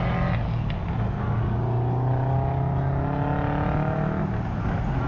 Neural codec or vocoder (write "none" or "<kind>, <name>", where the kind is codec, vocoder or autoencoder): none